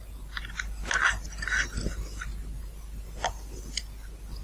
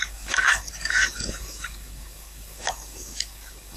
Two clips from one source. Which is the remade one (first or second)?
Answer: second